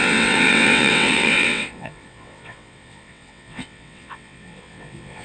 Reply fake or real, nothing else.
fake